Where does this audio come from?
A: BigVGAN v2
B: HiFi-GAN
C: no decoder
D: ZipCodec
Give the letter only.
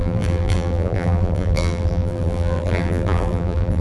A